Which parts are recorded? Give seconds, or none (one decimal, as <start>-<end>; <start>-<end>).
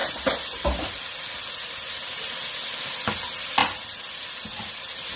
0.0-5.2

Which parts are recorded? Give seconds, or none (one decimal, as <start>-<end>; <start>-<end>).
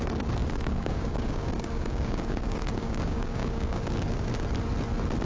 4.3-5.2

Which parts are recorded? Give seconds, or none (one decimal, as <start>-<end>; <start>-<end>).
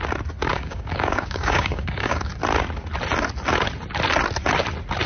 0.0-0.5; 2.3-5.1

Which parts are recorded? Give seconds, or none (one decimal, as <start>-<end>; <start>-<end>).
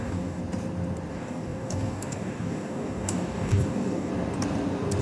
0.4-1.1; 4.1-5.0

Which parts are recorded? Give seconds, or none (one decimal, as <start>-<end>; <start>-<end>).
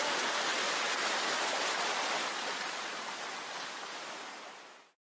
0.0-5.1